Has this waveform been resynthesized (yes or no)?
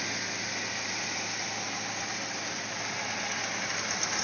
no